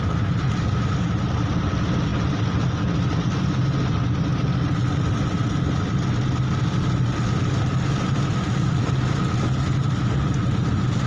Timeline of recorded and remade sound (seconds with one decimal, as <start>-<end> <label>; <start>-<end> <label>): 0.0-11.1 recorded